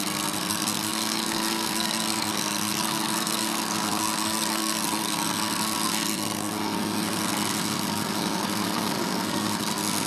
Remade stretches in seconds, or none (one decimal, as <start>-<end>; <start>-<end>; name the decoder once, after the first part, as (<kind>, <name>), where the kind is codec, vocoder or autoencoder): 0.0-10.1 (codec, SNAC)